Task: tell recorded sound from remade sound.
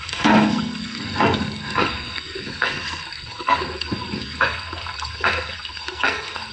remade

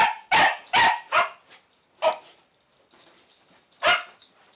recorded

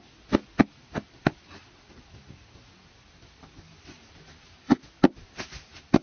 recorded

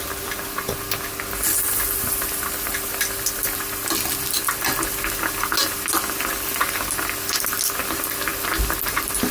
recorded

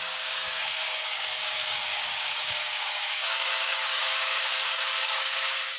remade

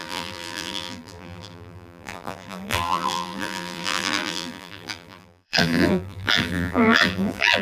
remade